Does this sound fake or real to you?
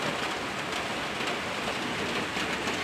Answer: real